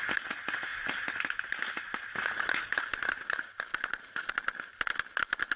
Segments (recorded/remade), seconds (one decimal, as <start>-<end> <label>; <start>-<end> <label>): 0.0-2.9 recorded; 2.9-4.3 remade; 4.3-5.6 recorded